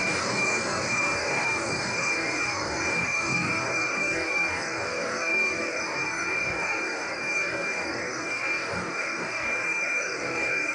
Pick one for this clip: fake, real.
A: fake